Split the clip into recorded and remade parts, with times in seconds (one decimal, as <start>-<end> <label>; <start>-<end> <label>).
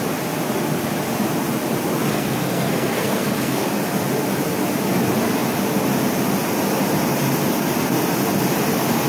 0.0-2.1 recorded; 2.1-3.7 remade; 3.7-9.1 recorded